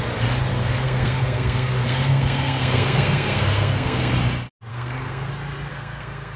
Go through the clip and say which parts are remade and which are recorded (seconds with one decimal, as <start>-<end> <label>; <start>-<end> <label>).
0.0-0.5 recorded; 0.5-4.1 remade; 4.1-4.7 recorded; 4.7-5.3 remade; 5.3-5.7 recorded; 5.7-6.4 remade